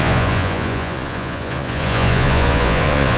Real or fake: fake